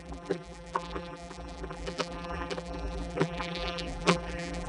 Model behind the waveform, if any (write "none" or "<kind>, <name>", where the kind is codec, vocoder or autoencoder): vocoder, BigVGAN v2